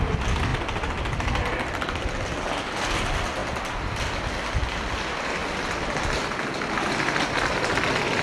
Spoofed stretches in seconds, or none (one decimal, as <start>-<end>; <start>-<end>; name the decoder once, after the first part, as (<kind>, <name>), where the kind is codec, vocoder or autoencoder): none